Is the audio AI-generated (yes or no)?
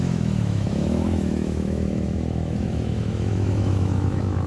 yes